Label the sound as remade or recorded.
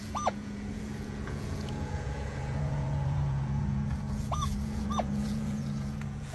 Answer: remade